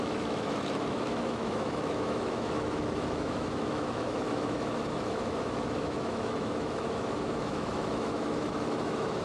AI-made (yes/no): yes